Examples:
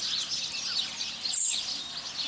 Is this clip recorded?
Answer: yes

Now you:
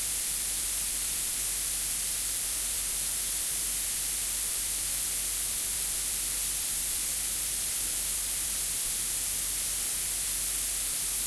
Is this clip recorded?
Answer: no